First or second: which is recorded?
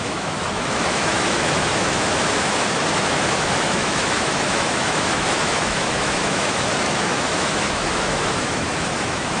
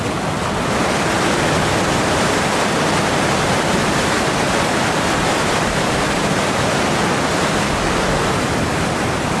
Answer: second